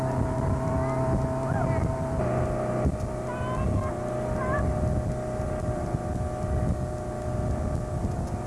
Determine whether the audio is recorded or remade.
recorded